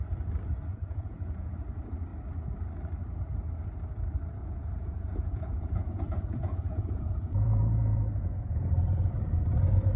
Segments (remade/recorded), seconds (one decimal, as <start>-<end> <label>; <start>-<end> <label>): 0.0-0.7 recorded; 0.7-1.5 remade; 1.5-4.4 recorded; 4.4-8.7 remade; 8.7-10.0 recorded